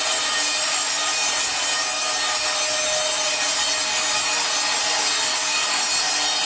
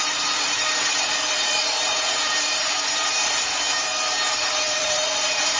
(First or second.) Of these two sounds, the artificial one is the second